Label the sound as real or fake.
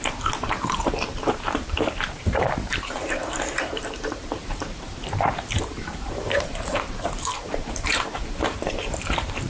fake